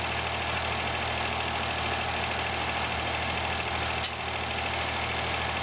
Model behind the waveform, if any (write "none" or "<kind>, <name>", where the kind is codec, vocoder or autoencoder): none